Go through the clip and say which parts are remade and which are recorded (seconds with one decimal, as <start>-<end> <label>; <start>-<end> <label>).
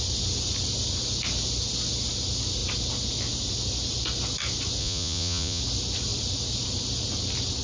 0.0-4.8 recorded; 4.8-5.6 remade; 5.6-7.6 recorded